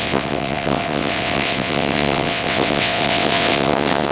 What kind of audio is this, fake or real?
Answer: fake